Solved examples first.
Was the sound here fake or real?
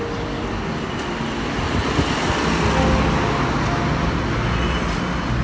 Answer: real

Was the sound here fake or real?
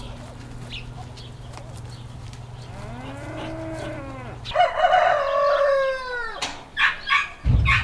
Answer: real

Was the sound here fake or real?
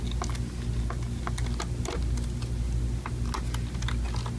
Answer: real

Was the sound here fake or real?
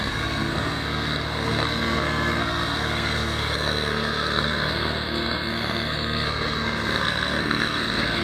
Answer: fake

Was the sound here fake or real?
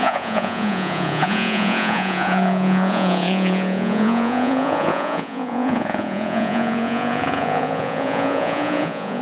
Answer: fake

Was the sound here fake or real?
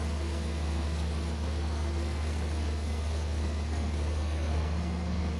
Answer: fake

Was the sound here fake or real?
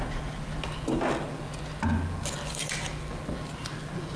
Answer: real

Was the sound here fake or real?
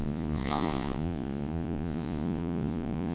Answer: fake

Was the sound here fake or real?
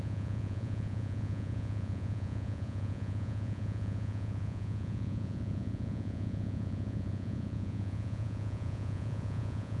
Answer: fake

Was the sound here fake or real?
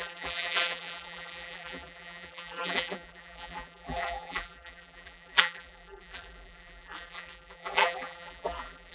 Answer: fake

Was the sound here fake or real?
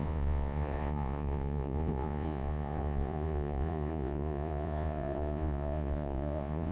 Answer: fake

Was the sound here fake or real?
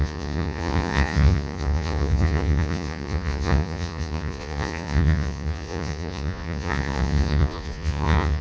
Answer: fake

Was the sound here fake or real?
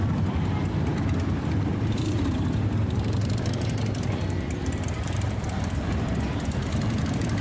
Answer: fake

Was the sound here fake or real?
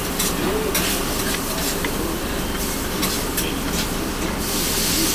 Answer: real